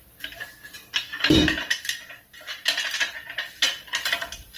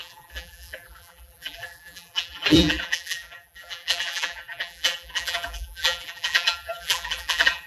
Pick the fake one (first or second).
second